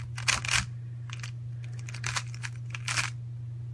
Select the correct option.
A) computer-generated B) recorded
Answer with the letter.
B